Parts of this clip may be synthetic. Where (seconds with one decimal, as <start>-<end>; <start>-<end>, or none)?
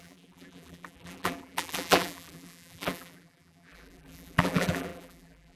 0.0-5.6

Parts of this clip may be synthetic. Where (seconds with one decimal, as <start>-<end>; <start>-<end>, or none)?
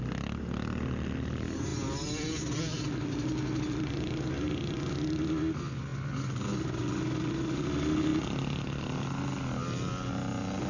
none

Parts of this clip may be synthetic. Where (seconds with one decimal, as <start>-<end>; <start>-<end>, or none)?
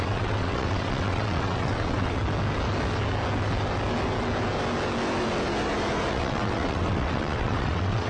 0.0-2.2; 6.1-8.1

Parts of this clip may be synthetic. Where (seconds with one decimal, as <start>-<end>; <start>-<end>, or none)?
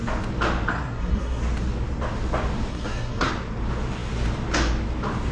0.7-1.4; 2.7-3.3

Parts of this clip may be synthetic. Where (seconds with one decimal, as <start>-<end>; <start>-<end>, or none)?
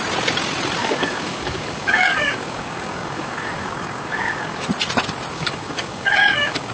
0.8-4.7; 5.3-6.7